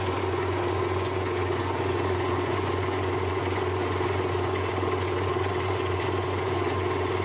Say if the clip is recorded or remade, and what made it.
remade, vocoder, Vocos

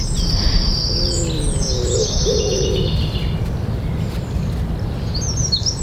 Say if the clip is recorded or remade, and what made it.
recorded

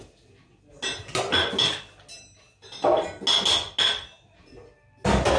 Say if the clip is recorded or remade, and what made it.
recorded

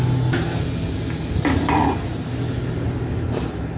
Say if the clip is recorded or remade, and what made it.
recorded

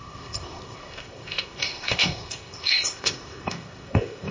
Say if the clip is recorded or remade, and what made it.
remade, codec, ZipCodec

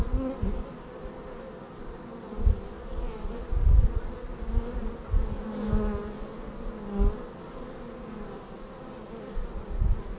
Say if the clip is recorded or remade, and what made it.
recorded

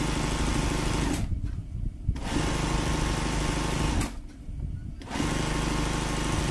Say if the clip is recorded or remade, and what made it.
recorded